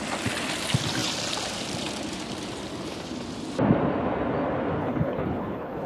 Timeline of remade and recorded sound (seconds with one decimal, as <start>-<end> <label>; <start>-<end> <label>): 0.0-4.8 recorded; 4.8-5.9 remade